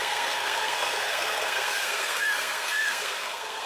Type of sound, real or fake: fake